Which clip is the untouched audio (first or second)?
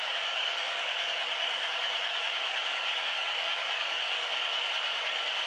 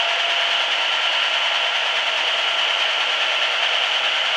second